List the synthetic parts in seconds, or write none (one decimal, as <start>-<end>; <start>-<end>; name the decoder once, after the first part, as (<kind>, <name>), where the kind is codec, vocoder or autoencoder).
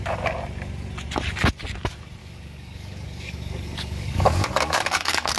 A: 2.2-5.4 (codec, DAC)